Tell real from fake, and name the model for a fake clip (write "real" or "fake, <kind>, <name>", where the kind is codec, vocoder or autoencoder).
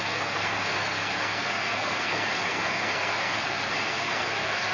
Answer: fake, codec, SNAC